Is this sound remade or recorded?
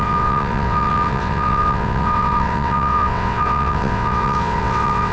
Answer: remade